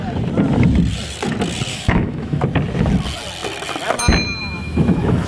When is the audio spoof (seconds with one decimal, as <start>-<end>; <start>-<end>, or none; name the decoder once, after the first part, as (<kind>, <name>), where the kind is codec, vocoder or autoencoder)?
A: 1.7-2.4 (autoencoder, DAC-VAE); 4.4-5.3